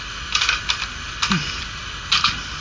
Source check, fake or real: fake